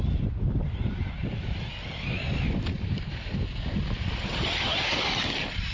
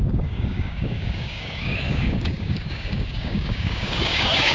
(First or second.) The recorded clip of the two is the first